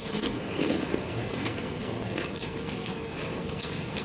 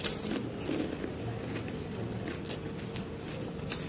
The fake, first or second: first